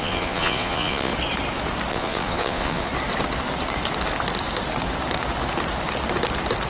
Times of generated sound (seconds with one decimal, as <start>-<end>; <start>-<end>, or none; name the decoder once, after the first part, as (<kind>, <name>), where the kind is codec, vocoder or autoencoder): 0.0-1.1 (vocoder, Vocos); 1.9-2.9

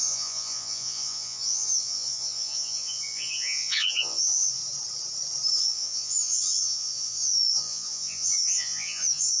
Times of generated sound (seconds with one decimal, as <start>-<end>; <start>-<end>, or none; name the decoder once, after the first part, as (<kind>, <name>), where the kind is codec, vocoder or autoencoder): 0.0-4.6 (vocoder, Vocos); 5.6-9.4

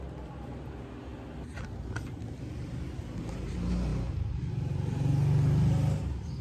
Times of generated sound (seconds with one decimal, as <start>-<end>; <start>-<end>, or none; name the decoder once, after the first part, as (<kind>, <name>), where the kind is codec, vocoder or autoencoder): 3.9-4.5 (vocoder, BigVGAN v2)

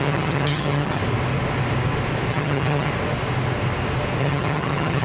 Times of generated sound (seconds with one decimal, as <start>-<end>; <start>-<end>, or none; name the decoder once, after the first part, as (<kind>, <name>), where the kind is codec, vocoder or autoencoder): 0.0-1.0 (vocoder, HiFi-GAN); 2.3-2.9; 4.2-5.0

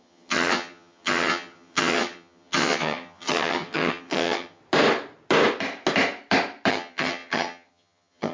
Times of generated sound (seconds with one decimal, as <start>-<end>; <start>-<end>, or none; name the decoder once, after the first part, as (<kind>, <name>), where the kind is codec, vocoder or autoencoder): 0.0-4.6 (vocoder, HiFi-GAN); 6.7-8.3

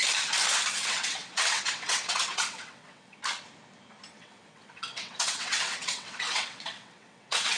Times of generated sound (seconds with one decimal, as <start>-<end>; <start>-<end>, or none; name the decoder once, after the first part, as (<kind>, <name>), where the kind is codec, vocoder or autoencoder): 0.7-3.2 (vocoder, WaveNeXt); 4.1-7.6

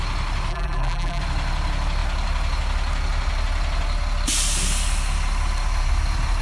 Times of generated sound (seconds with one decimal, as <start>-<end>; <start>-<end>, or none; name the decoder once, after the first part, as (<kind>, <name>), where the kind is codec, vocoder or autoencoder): 0.5-1.2 (vocoder, BigVGAN v2)

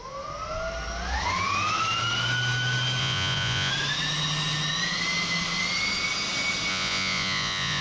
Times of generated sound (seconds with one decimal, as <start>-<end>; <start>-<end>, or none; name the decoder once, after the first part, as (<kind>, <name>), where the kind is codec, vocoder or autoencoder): 3.0-3.7 (vocoder, Vocos); 6.7-7.8